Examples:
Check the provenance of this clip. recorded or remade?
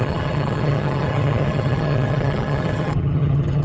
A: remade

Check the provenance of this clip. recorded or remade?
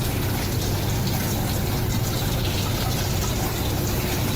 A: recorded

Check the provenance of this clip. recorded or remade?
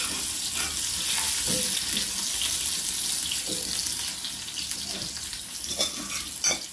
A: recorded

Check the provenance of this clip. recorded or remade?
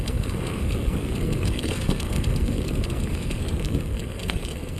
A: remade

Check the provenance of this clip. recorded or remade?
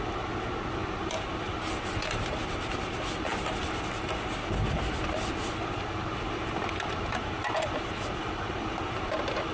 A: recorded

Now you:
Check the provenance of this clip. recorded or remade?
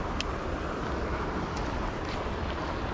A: recorded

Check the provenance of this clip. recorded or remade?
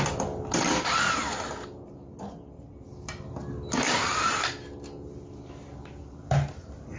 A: recorded